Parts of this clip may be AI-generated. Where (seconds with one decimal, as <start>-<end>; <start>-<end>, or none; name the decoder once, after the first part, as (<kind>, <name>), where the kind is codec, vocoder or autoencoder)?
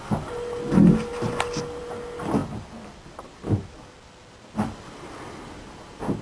none